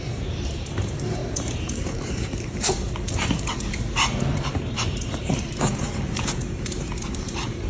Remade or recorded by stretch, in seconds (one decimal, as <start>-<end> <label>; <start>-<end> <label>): 0.0-7.7 remade